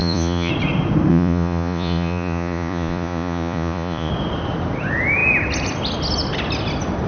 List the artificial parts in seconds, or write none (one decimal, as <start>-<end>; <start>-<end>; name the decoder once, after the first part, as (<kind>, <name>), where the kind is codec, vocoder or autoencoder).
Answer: 0.0-0.5 (vocoder, Vocos); 1.1-4.1